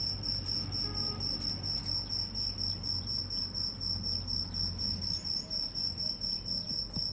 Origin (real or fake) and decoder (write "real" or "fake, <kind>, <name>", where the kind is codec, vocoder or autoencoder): real